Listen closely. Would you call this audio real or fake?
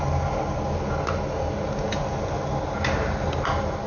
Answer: real